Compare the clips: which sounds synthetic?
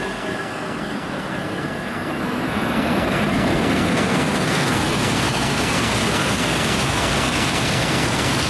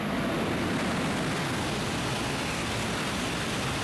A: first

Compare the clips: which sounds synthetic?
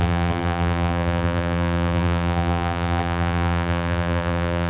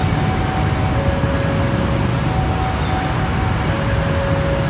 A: first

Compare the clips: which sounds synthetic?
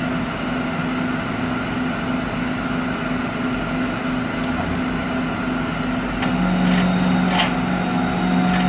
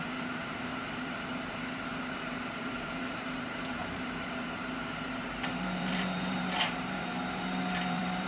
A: second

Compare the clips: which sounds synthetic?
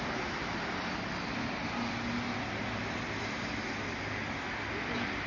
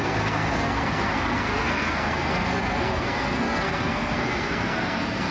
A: second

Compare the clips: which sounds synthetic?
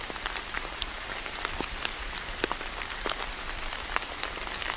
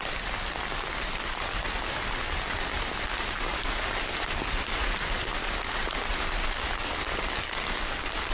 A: first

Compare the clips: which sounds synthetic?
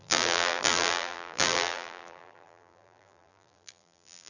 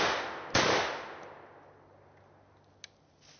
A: first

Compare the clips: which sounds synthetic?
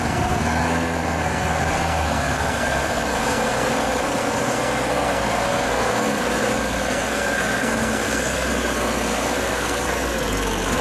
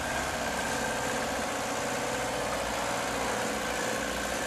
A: first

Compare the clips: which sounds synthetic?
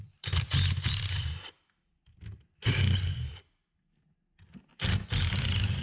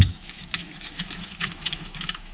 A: second